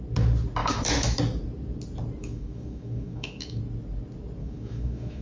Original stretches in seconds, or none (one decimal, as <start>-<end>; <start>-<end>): 0.0-0.6; 1.2-2.2; 3.6-4.4